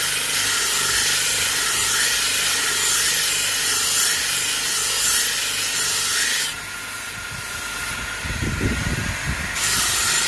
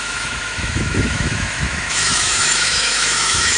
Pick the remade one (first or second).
second